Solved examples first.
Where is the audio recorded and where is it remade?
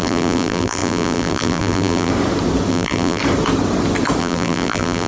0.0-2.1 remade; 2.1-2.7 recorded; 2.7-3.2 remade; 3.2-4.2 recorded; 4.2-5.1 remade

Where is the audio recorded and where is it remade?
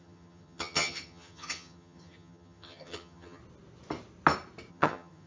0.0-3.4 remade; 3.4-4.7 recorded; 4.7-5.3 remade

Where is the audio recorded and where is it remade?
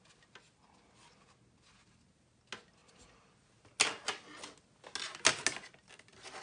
0.0-6.4 recorded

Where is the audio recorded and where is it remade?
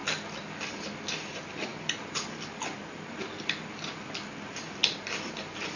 0.0-5.8 recorded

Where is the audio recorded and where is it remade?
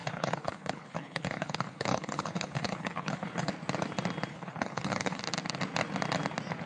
0.0-3.5 remade; 3.5-4.3 recorded; 4.3-5.2 remade; 5.2-6.7 recorded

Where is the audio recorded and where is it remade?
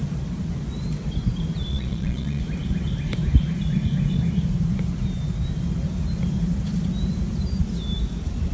0.0-1.7 recorded; 1.7-2.4 remade; 2.4-8.5 recorded